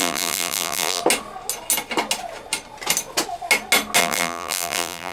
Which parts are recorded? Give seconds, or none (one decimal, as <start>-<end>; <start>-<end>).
1.0-4.0